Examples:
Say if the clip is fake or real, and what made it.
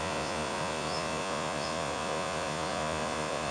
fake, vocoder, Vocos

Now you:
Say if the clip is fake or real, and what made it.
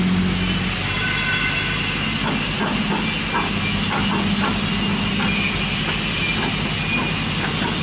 real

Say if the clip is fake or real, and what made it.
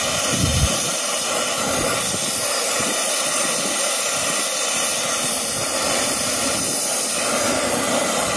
real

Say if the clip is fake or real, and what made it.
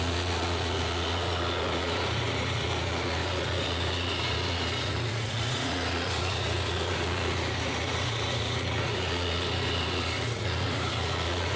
fake, vocoder, Vocos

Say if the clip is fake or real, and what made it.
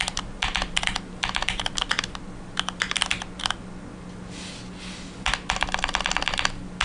real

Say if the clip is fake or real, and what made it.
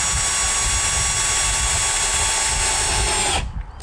real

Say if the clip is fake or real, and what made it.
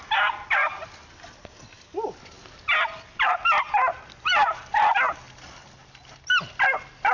real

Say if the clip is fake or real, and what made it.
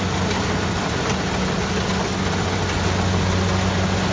real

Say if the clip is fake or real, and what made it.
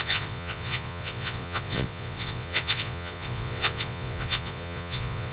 fake, vocoder, Vocos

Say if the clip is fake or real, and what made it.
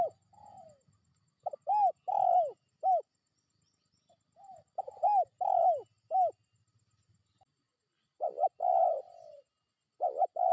real